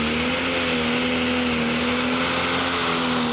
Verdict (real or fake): real